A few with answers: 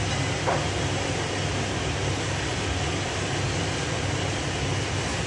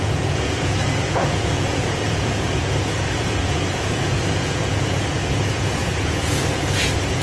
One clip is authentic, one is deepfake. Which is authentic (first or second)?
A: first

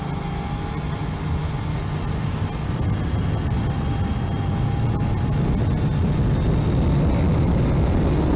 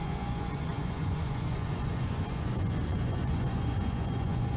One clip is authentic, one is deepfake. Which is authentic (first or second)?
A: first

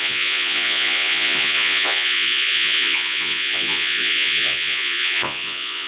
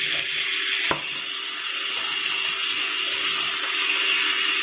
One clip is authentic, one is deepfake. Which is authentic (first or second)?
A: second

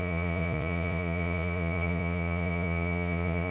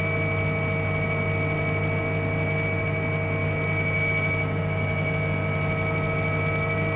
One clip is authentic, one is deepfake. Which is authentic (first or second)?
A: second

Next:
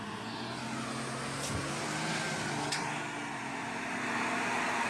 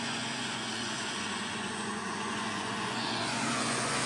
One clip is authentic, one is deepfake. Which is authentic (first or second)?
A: first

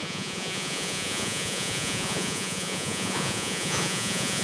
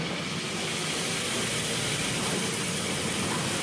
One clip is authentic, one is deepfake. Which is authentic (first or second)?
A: second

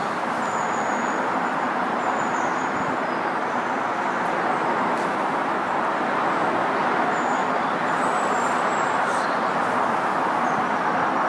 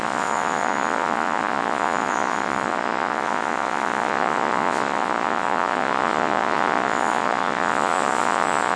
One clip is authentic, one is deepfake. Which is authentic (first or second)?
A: first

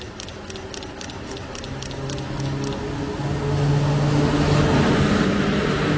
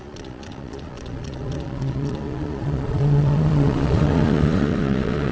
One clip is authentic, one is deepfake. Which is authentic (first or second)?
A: first